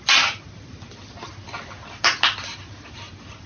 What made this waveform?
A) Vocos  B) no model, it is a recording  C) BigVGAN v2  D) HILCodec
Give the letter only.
B